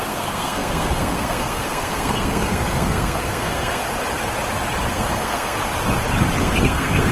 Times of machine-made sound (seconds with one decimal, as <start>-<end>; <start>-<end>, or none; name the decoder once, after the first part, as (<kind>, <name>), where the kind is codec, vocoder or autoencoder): 0.0-3.8 (codec, SNAC); 4.9-5.6; 6.4-7.1